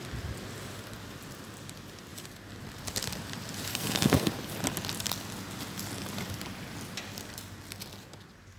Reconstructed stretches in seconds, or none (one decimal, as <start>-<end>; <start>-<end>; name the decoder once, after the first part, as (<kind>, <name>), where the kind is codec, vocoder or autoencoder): 3.7-4.3 (codec, SNAC)